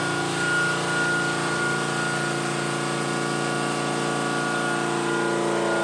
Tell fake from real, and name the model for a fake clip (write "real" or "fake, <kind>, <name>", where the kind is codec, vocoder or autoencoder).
real